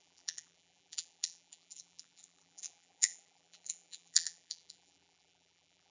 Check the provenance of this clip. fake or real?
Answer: fake